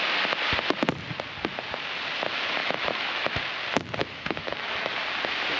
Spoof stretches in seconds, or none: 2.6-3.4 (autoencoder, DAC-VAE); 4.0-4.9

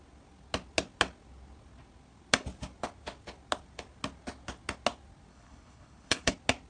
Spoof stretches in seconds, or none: 5.3-6.3 (codec, HILCodec)

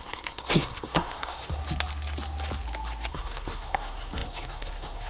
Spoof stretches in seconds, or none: 0.0-1.6 (codec, SNAC); 3.1-5.1

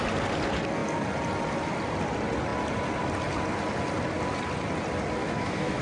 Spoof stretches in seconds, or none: 5.2-5.8 (autoencoder, DAC-VAE)

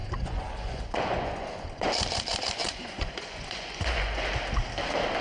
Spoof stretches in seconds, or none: 0.0-1.9 (vocoder, Vocos); 2.6-4.3

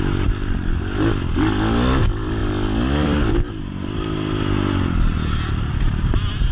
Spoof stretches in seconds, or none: none

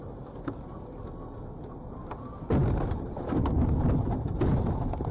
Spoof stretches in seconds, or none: none